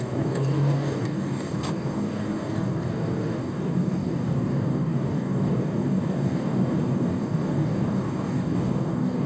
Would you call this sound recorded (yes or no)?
no